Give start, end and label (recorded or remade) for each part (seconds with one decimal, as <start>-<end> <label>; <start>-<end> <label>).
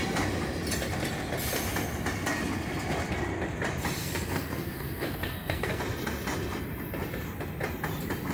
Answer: 0.0-4.0 recorded; 4.0-5.8 remade; 5.8-8.3 recorded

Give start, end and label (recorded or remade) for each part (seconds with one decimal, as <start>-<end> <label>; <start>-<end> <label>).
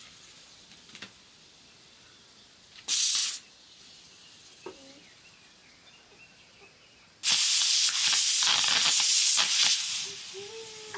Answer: 0.0-11.0 recorded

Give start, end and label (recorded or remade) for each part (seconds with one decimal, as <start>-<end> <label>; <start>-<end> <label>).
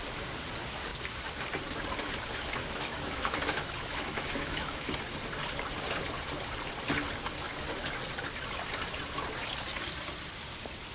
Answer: 0.0-2.6 recorded; 2.6-5.0 remade; 5.0-10.9 recorded